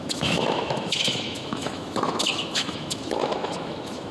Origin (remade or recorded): remade